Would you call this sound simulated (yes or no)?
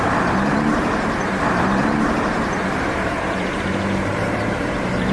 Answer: yes